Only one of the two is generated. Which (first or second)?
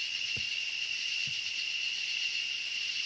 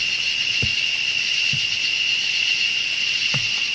first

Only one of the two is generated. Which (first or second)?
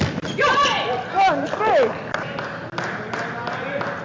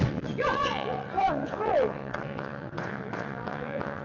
second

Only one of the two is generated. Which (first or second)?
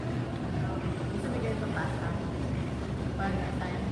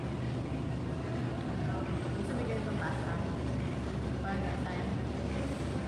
first